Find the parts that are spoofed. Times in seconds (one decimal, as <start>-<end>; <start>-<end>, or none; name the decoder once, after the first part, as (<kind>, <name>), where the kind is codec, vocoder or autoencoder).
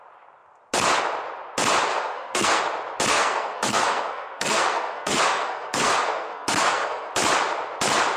1.9-2.6 (codec, SNAC); 3.1-7.1